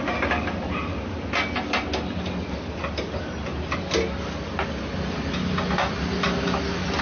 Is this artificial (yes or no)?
no